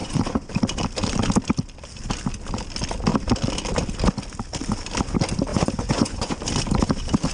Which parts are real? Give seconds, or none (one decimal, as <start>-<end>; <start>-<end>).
0.5-5.5; 6.4-7.3